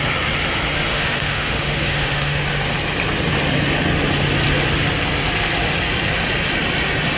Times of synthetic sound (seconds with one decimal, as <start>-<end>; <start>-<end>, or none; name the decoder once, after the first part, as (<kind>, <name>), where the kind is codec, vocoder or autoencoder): 0.9-2.4 (autoencoder, DAC-VAE)